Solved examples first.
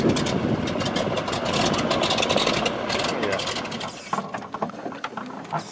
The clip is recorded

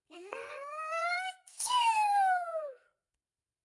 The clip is remade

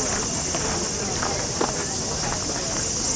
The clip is recorded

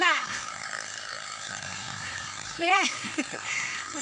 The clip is remade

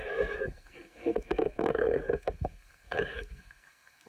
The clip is remade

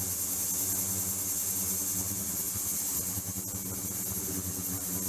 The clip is recorded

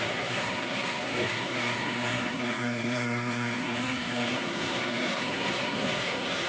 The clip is remade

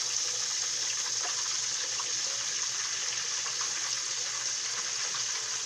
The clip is recorded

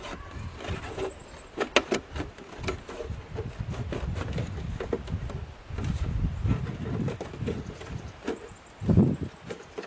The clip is recorded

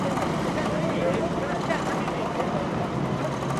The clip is recorded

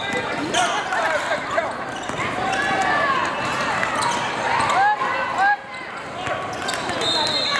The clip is recorded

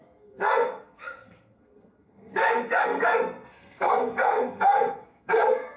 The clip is remade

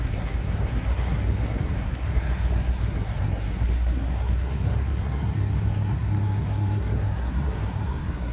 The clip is remade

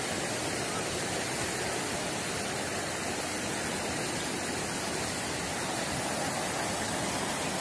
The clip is recorded